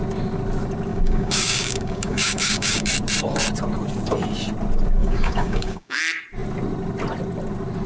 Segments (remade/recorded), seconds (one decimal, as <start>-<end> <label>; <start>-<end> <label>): 0.0-0.9 recorded; 0.9-2.9 remade; 2.9-5.0 recorded; 5.0-6.0 remade; 6.0-7.9 recorded